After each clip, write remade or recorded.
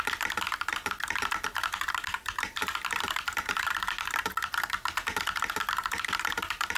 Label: recorded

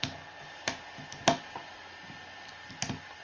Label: recorded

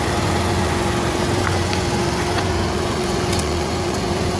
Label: remade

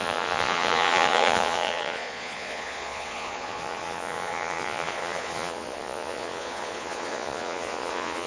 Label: remade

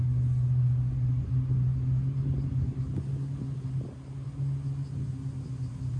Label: recorded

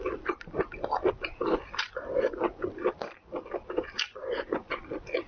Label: recorded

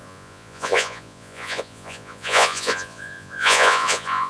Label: remade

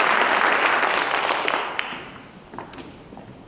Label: recorded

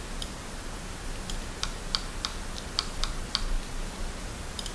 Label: recorded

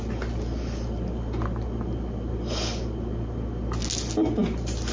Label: recorded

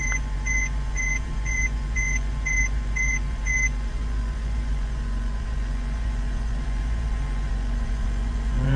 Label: remade